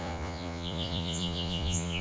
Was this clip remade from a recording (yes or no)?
yes